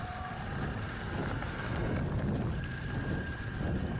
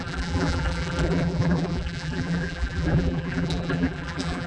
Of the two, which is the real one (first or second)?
first